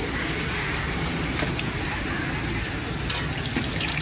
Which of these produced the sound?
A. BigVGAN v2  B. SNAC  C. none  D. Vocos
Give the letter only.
C